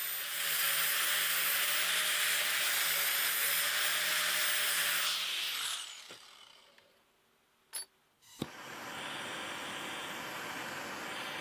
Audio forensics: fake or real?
real